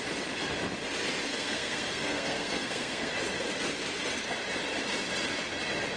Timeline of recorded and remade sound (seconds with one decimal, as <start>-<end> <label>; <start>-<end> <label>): 0.0-1.3 recorded; 1.3-3.1 remade; 3.1-6.0 recorded